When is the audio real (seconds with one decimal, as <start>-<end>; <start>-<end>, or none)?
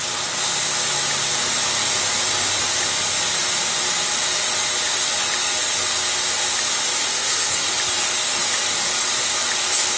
0.0-7.1; 7.7-10.0